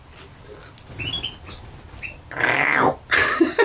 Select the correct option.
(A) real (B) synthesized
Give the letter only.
A